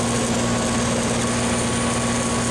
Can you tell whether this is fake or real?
real